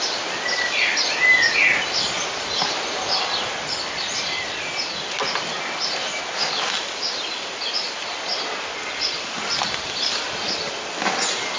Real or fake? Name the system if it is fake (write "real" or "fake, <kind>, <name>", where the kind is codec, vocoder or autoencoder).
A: real